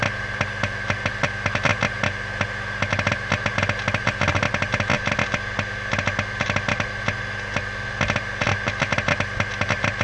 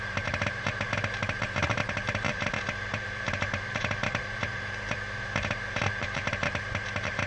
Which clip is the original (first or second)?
first